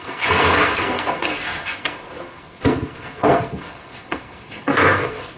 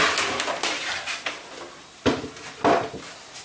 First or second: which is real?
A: second